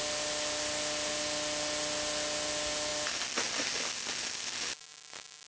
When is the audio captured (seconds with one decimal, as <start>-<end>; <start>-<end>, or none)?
0.0-5.5